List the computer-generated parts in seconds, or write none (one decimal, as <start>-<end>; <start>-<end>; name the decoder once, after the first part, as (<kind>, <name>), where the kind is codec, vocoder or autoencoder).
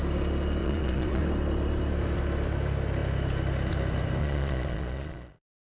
0.6-1.2 (vocoder, Vocos); 4.2-5.8